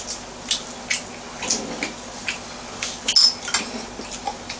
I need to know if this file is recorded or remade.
recorded